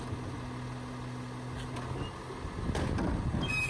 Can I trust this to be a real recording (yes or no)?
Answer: yes